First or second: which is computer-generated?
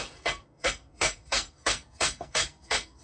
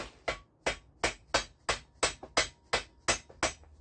first